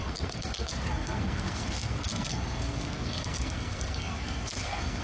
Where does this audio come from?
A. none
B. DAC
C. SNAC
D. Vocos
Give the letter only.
C